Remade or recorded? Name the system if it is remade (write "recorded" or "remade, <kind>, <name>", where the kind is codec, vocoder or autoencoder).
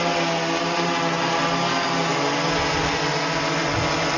recorded